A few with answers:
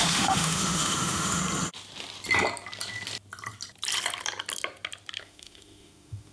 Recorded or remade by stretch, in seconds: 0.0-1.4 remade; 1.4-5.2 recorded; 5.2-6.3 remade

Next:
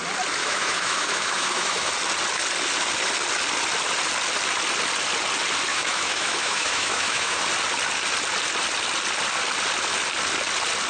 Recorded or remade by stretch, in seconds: 0.0-0.4 recorded; 0.4-1.9 remade; 1.9-5.7 recorded; 5.7-7.4 remade; 7.4-10.9 recorded